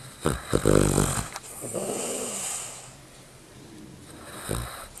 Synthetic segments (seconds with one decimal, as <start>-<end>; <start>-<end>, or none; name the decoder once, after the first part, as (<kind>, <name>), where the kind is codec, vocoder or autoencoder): none